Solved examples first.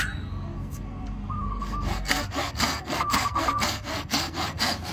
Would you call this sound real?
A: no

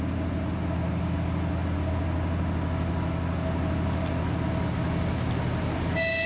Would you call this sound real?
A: yes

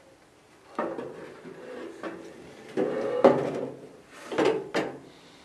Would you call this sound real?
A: yes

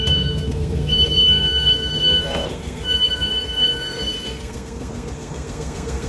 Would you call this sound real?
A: no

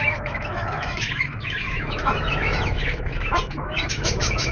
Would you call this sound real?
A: no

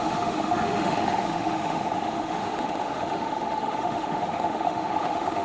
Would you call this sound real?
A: no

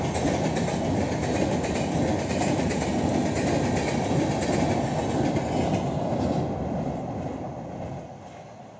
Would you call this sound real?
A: yes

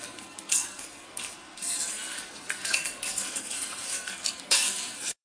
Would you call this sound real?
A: no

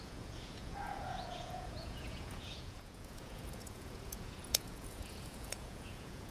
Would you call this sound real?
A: no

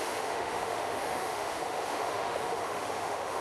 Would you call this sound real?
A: no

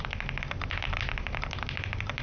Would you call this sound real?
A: yes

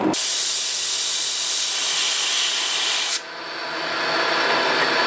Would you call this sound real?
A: yes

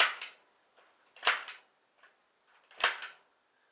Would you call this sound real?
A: yes